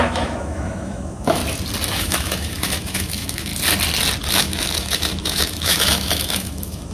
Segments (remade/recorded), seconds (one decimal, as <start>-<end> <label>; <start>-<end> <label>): 0.0-1.4 remade; 1.4-2.0 recorded; 2.0-3.5 remade; 3.5-4.3 recorded; 4.3-6.9 remade